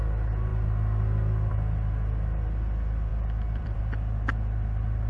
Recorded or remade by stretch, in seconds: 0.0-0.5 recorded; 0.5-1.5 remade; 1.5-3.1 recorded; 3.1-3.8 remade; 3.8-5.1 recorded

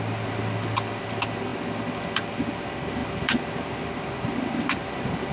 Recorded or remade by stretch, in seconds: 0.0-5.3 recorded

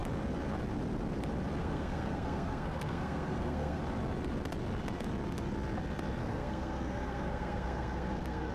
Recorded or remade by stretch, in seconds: 0.0-1.6 recorded; 1.6-3.8 remade; 3.8-6.2 recorded; 6.2-8.5 remade

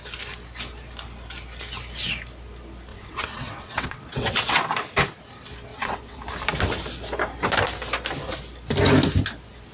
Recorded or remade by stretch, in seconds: 0.0-2.9 recorded; 2.9-4.6 remade; 4.6-5.7 recorded; 5.7-6.2 remade; 6.2-9.7 recorded